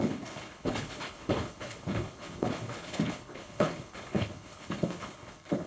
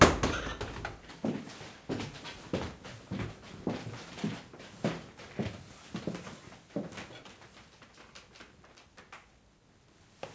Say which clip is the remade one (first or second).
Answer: first